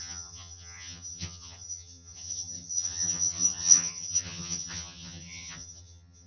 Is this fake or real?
fake